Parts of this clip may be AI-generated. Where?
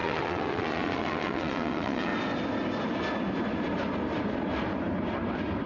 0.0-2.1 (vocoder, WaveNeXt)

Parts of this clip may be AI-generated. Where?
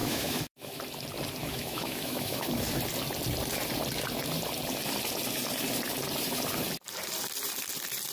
0.0-0.8 (autoencoder, DAC-VAE); 1.4-2.8